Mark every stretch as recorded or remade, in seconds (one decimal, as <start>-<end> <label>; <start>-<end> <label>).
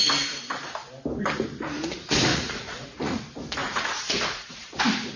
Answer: 0.0-2.3 recorded; 2.3-3.2 remade; 3.2-3.6 recorded; 3.6-4.8 remade; 4.8-5.2 recorded